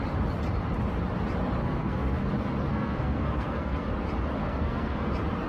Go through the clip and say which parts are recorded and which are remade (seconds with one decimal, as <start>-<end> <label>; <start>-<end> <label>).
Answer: 0.0-1.6 recorded; 1.6-2.2 remade; 2.2-2.7 recorded; 2.7-3.9 remade; 3.9-4.4 recorded; 4.4-5.1 remade; 5.1-5.5 recorded